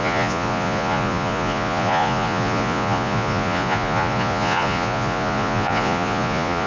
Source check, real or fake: fake